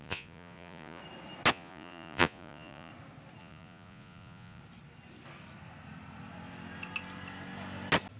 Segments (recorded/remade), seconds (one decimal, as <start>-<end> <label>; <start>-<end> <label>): 0.0-1.0 remade; 1.0-1.5 recorded; 1.5-2.9 remade; 2.9-3.4 recorded; 3.4-4.6 remade; 4.6-8.2 recorded

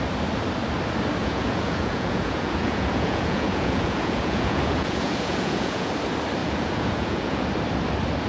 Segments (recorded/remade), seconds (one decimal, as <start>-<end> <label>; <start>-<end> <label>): 0.0-1.2 recorded; 1.2-5.9 remade; 5.9-6.4 recorded; 6.4-7.5 remade; 7.5-8.3 recorded

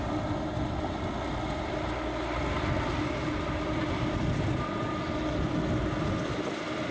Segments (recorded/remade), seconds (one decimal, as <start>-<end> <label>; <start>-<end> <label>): 0.0-6.9 recorded

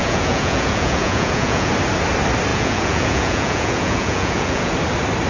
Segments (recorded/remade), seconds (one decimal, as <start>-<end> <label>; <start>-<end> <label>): 0.0-1.7 remade; 1.7-2.5 recorded; 2.5-4.7 remade; 4.7-5.3 recorded

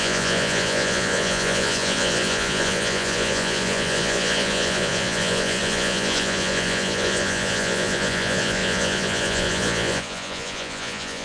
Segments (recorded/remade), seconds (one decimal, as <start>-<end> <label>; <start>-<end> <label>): 0.0-11.2 remade

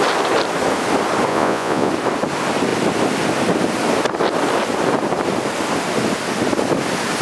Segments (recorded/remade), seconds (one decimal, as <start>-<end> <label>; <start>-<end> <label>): 0.0-1.3 recorded; 1.3-1.9 remade; 1.9-7.2 recorded